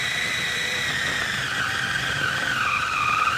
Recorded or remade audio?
remade